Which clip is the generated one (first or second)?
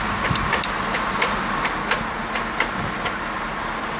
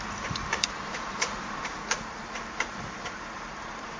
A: second